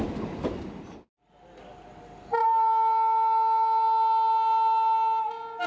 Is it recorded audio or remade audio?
recorded